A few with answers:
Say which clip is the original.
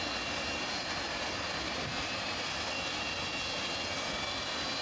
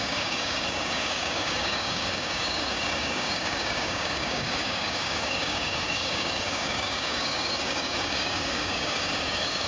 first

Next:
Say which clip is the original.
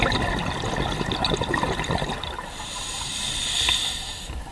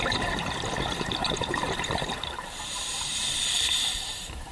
first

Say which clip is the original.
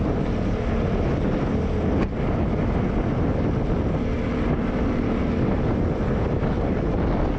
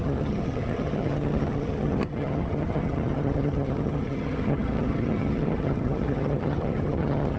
first